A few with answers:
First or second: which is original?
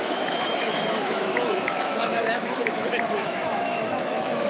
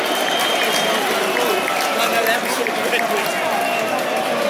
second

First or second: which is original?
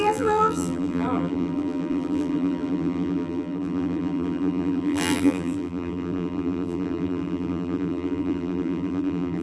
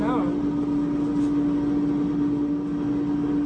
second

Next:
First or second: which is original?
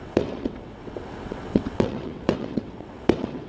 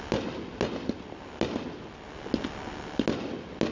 second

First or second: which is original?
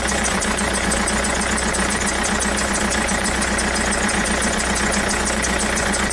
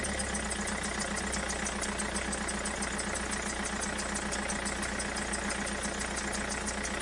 second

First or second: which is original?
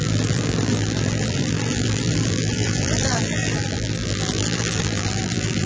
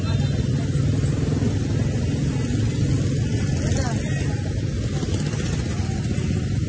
second